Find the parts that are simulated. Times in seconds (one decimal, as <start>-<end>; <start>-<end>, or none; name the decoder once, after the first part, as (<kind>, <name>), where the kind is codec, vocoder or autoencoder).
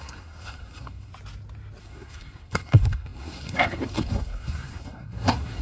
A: 0.0-1.1 (codec, SNAC); 1.8-5.6